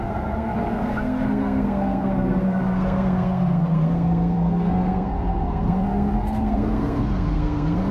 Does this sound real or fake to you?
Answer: fake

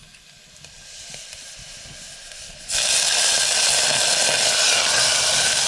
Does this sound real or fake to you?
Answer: real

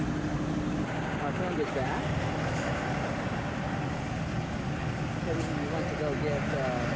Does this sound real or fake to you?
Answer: real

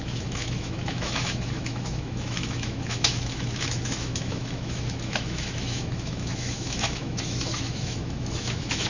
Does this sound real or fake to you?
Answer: fake